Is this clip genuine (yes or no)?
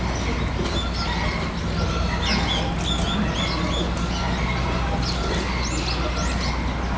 yes